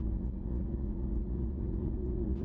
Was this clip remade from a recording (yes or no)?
yes